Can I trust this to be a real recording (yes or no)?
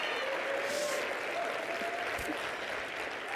yes